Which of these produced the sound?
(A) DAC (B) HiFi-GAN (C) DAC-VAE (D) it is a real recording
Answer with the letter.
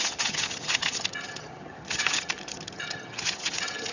B